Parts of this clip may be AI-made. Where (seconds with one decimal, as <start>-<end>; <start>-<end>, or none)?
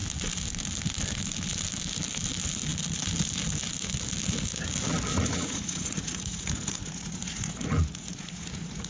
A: 5.1-8.9